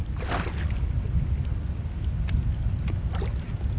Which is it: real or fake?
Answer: real